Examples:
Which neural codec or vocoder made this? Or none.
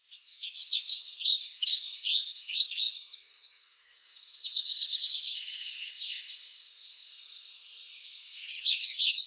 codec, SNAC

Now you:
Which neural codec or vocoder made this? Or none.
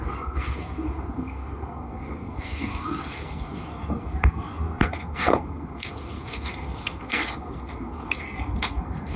codec, SNAC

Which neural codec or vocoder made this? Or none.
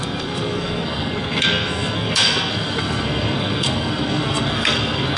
codec, SNAC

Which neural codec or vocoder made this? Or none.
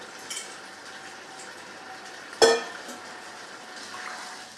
none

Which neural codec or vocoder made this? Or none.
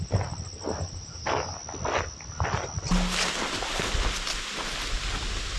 none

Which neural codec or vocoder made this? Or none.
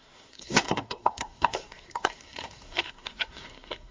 codec, SNAC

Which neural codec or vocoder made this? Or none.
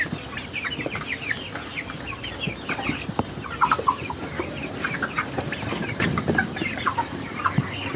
none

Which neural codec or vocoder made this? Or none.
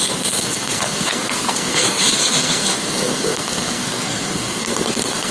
codec, SNAC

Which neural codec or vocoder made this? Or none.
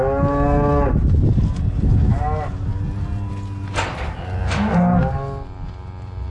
none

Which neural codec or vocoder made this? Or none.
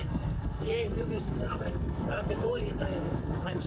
codec, SNAC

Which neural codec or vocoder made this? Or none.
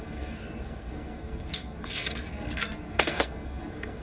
codec, SNAC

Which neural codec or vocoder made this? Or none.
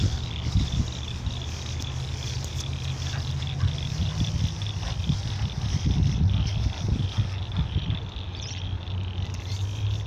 none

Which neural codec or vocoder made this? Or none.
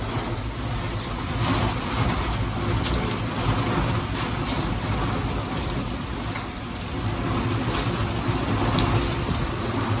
none